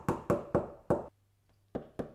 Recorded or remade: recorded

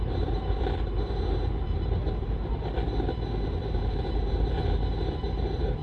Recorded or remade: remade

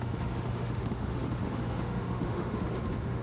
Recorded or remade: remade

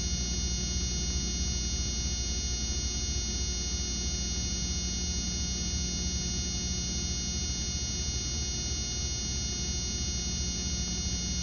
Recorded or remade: recorded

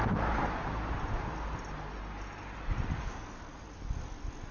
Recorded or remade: recorded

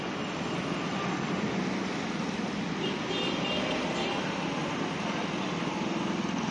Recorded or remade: recorded